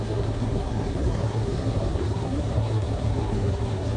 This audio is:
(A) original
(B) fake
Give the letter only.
B